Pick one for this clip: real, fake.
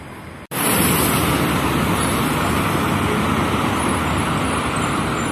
real